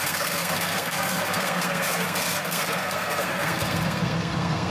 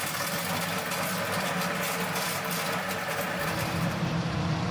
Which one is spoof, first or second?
first